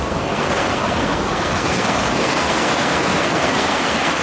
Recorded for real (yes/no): no